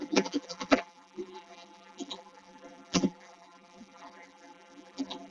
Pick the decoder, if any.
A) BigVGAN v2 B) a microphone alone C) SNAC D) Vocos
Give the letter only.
A